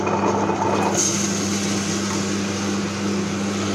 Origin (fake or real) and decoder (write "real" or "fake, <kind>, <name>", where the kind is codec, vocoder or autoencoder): real